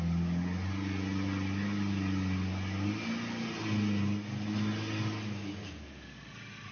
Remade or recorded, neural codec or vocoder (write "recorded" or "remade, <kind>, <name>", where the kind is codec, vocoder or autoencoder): recorded